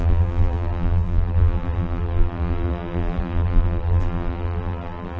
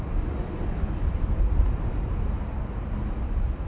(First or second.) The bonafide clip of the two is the second